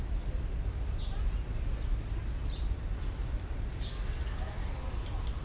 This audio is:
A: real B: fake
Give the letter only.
A